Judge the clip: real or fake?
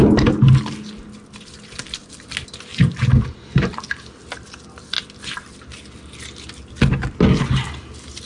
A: real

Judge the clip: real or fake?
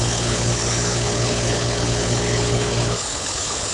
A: fake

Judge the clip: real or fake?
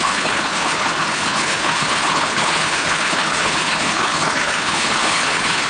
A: fake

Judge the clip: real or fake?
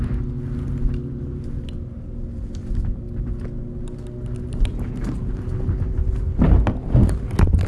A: real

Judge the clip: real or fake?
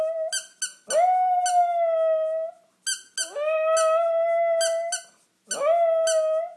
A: real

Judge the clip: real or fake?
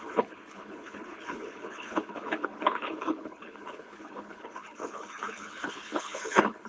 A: fake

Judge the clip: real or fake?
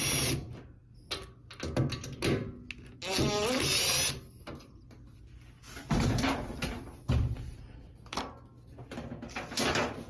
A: real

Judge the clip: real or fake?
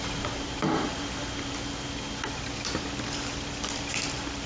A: real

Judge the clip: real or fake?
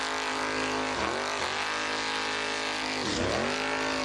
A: real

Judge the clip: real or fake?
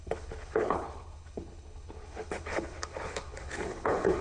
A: fake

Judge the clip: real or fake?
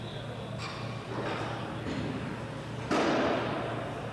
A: real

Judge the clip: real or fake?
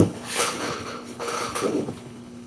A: fake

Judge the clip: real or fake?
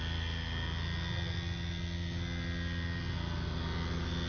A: real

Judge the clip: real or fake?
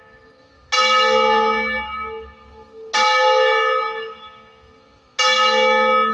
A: real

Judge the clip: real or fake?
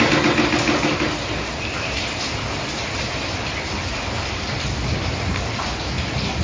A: real